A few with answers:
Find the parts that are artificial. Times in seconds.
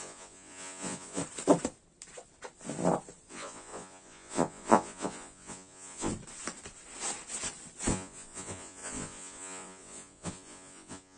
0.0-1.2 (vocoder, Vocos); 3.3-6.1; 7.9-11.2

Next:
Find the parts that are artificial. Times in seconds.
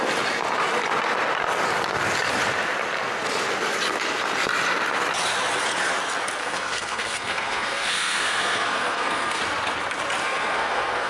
6.4-9.4 (codec, SNAC); 10.2-11.1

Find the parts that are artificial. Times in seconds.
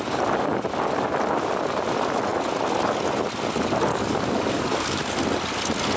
3.9-5.2 (codec, DAC)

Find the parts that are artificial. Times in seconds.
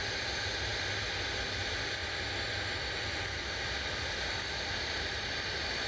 none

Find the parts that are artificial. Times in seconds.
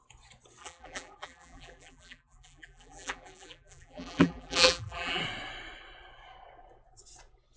0.6-5.2 (vocoder, BigVGAN v2)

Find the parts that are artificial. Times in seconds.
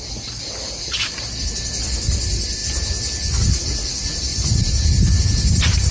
4.3-5.2 (vocoder, BigVGAN v2)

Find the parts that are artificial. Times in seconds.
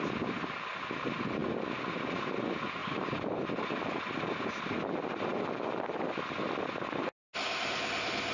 2.8-3.5 (vocoder, BigVGAN v2)